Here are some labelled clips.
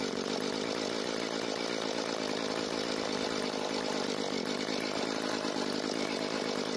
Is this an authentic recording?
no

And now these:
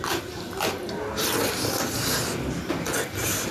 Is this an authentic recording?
yes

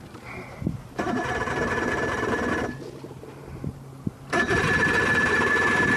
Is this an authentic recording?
no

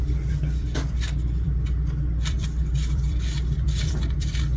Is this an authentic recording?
no